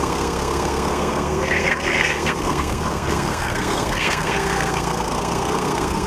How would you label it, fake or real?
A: fake